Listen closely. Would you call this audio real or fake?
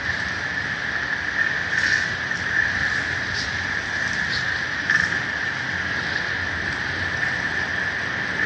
real